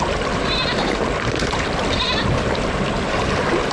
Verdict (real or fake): real